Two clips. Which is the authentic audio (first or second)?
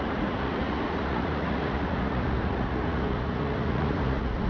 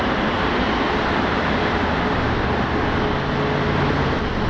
second